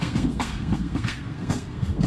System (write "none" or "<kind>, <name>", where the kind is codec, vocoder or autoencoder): codec, SNAC